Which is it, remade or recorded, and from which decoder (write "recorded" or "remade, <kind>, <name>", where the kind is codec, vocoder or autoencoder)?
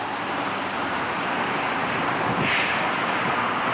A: remade, vocoder, BigVGAN v2